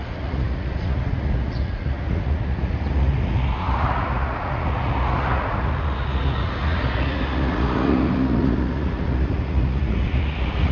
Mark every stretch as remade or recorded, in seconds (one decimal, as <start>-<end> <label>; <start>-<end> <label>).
0.0-10.7 remade